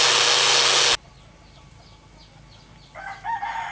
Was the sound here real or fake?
real